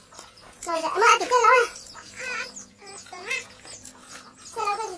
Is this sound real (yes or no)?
no